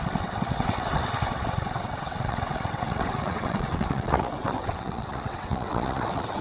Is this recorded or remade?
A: remade